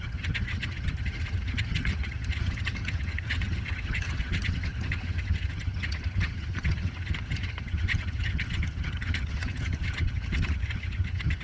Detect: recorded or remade remade